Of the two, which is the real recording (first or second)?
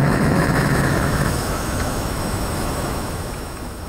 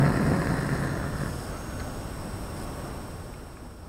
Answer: second